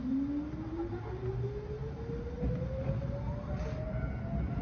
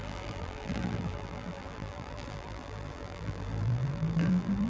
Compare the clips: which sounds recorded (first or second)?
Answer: first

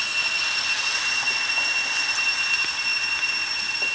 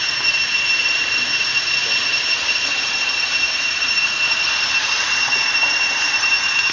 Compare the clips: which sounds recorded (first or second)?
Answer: first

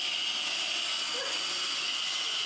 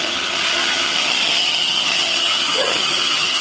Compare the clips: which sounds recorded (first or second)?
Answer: first